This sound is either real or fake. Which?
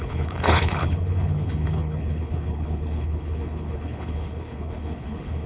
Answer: fake